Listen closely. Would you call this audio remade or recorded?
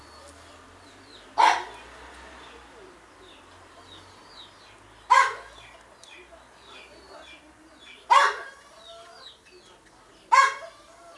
recorded